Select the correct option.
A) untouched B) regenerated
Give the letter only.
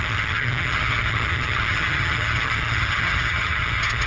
B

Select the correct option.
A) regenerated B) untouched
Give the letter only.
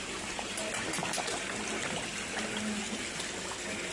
B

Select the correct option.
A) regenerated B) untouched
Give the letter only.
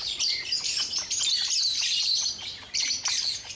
B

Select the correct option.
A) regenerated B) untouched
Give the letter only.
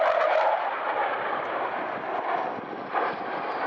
B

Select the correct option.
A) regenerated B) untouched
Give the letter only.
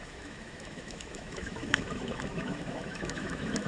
A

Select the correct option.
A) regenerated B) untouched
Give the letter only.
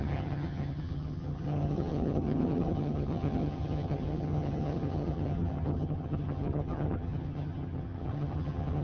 A